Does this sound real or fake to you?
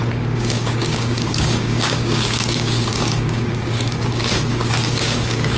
fake